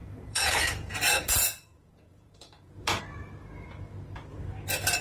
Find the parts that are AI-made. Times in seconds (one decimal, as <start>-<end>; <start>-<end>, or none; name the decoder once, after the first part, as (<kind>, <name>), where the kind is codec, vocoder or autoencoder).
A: 0.0-3.0 (vocoder, Vocos)